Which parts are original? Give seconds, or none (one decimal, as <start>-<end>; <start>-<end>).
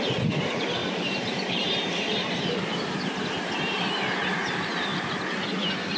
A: 0.0-0.8; 3.2-4.9; 5.4-6.0